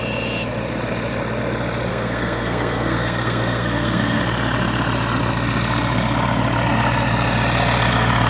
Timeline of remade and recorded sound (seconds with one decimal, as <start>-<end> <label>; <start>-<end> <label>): 0.0-1.9 recorded; 1.9-4.2 remade; 4.2-8.3 recorded